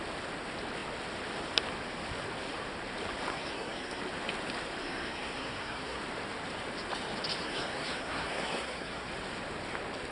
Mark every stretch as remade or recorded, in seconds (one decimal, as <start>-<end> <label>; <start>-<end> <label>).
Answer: 0.0-3.3 recorded; 3.3-4.0 remade; 4.0-4.8 recorded; 4.8-6.0 remade; 6.0-7.4 recorded; 7.4-9.1 remade; 9.1-10.1 recorded